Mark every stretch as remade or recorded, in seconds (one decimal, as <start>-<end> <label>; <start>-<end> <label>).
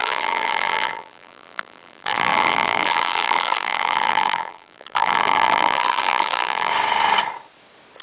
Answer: 0.0-6.7 remade; 6.7-8.0 recorded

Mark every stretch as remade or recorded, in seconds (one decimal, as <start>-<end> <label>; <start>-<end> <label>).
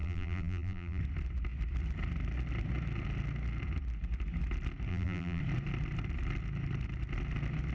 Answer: 0.0-1.0 remade; 1.0-4.9 recorded; 4.9-5.4 remade; 5.4-7.7 recorded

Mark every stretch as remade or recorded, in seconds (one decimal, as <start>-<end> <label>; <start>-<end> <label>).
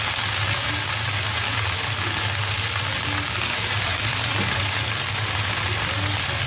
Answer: 0.0-3.9 recorded; 3.9-4.6 remade; 4.6-6.5 recorded